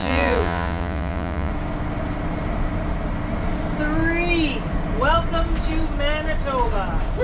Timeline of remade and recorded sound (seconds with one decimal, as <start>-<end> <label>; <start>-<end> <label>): 0.0-1.5 remade; 1.5-7.2 recorded